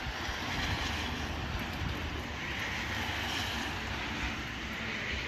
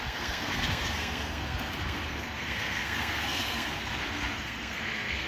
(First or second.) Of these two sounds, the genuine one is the first